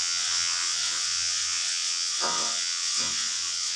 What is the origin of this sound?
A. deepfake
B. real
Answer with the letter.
A